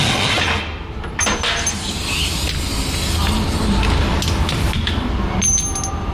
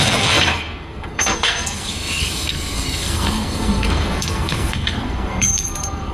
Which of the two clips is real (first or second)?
first